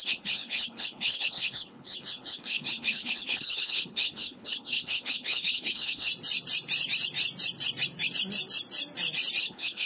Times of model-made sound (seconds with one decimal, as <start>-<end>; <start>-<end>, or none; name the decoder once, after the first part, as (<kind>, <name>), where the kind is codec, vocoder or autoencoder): 0.0-6.1 (codec, HILCodec); 9.4-9.9